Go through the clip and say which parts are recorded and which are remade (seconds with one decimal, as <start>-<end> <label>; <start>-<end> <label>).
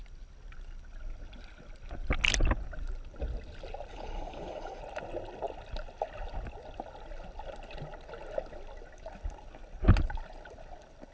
0.0-3.9 recorded; 3.9-4.8 remade; 4.8-11.1 recorded